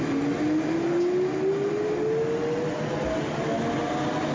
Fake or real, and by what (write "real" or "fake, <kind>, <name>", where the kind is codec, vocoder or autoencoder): real